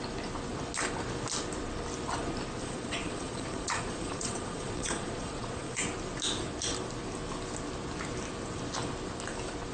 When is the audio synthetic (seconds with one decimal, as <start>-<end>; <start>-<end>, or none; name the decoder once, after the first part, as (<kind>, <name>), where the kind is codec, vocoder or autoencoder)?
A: 2.6-5.8 (vocoder, Vocos)